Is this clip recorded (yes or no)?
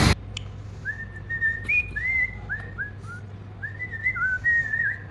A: yes